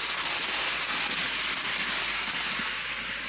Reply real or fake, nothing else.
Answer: real